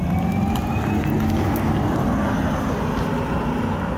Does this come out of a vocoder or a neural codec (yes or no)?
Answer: no